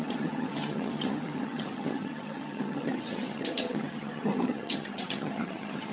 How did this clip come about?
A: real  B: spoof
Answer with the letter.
B